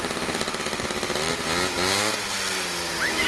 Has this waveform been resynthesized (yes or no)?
no